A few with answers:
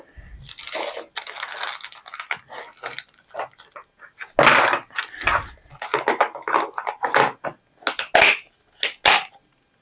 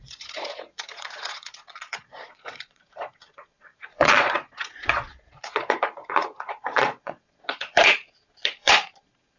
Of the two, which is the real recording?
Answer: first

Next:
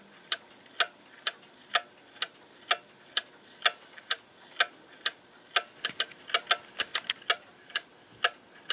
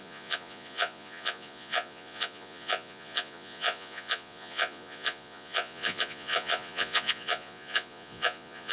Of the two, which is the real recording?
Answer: first